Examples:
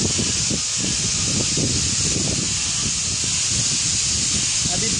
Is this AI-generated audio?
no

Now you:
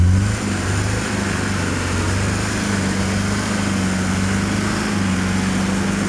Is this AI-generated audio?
no